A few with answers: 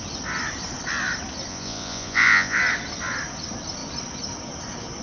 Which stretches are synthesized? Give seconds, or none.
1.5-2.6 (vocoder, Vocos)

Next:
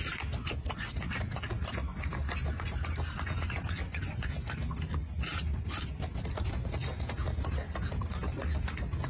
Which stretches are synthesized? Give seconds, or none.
none

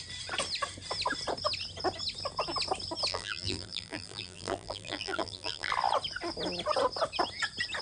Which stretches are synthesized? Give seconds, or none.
3.1-5.7 (vocoder, BigVGAN v2)

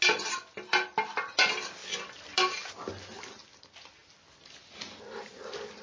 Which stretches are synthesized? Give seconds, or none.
none